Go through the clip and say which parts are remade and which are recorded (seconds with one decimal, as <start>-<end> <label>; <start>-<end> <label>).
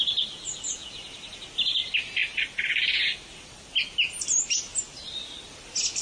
0.0-6.0 recorded